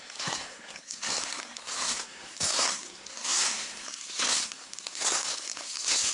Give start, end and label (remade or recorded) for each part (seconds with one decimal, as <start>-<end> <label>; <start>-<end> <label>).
0.0-6.1 remade